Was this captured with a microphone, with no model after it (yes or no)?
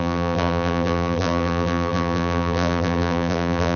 no